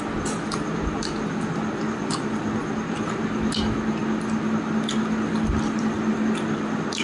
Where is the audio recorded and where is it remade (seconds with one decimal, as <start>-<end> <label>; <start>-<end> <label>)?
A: 0.0-7.0 recorded